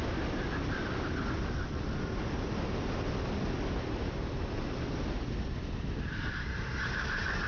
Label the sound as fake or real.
real